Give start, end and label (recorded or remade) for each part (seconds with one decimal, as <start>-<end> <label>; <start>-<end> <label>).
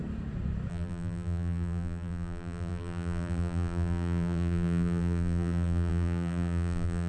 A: 0.0-0.7 recorded; 0.7-7.1 remade